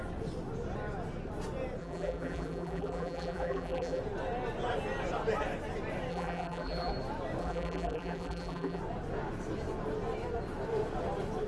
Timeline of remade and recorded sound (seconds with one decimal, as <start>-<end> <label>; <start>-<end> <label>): 0.0-1.8 recorded; 1.8-4.0 remade; 4.0-6.1 recorded; 6.1-6.9 remade; 6.9-7.4 recorded; 7.4-8.8 remade; 8.8-11.5 recorded